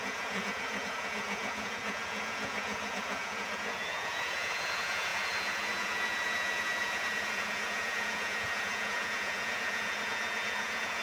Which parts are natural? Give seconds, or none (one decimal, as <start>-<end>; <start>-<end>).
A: none